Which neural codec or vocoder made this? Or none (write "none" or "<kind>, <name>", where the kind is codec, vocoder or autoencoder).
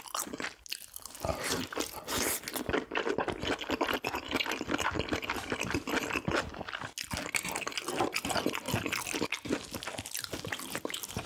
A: none